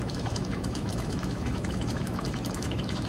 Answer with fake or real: fake